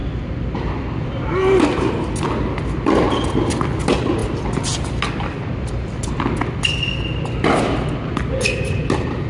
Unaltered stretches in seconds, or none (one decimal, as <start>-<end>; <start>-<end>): 0.0-9.3